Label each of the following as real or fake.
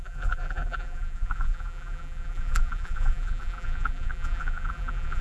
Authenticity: fake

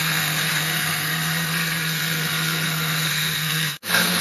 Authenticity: fake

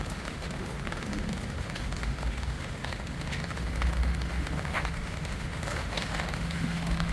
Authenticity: fake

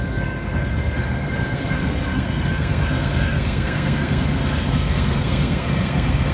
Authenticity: fake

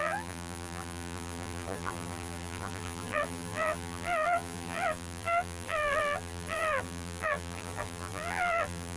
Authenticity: fake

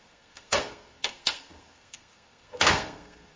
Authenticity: fake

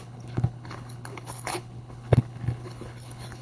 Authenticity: fake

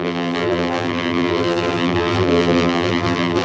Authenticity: fake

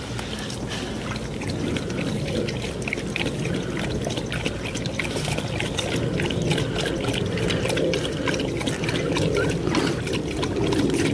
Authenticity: real